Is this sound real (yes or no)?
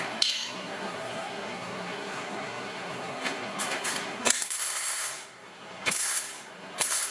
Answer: no